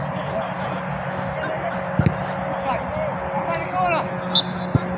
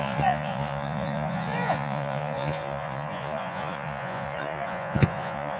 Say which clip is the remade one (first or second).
second